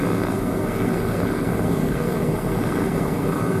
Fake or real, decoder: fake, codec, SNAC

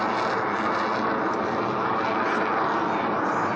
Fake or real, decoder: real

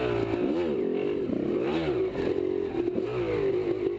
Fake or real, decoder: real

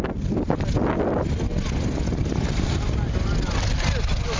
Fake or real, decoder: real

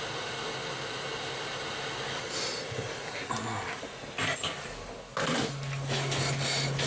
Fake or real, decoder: real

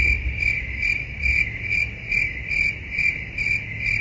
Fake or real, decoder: real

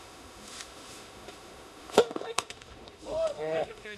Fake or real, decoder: fake, autoencoder, DAC-VAE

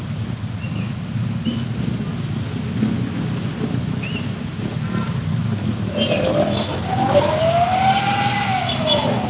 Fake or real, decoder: real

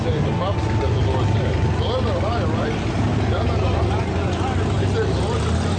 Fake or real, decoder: real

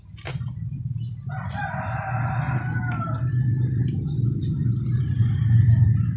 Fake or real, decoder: fake, vocoder, BigVGAN v2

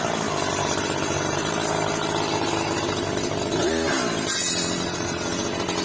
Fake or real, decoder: real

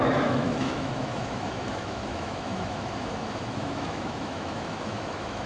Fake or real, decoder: fake, autoencoder, DAC-VAE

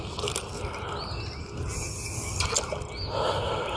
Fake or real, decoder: real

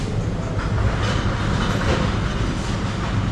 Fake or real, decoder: real